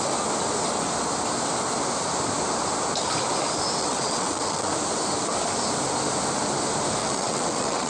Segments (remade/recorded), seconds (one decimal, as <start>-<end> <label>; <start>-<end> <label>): 0.0-3.8 recorded; 3.8-4.7 remade; 4.7-7.0 recorded; 7.0-7.9 remade